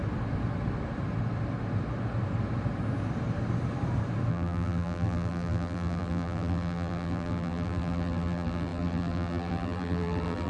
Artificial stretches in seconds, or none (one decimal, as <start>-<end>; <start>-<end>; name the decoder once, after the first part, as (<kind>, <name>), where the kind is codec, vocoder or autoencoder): 4.3-10.5 (vocoder, BigVGAN v2)